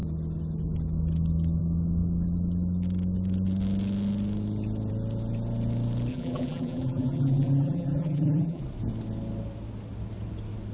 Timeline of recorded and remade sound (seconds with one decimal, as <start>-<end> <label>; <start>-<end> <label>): 0.0-6.1 recorded; 6.1-8.6 remade; 8.6-10.7 recorded